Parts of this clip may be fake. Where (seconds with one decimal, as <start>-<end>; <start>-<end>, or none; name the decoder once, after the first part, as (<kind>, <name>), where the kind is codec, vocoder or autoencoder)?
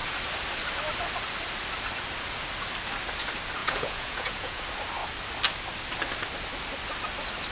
3.6-4.6 (vocoder, Vocos)